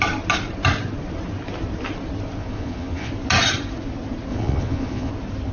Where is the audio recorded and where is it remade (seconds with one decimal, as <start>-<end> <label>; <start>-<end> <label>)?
0.0-2.4 recorded; 2.4-3.1 remade; 3.1-4.3 recorded; 4.3-5.1 remade; 5.1-5.5 recorded